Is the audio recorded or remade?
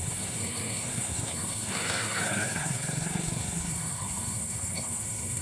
remade